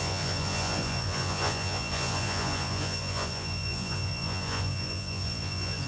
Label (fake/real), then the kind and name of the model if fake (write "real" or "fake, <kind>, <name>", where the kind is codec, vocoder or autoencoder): fake, vocoder, Vocos